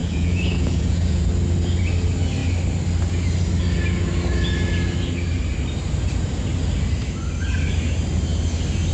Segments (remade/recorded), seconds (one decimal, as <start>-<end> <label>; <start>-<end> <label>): 0.0-1.2 remade; 1.2-8.9 recorded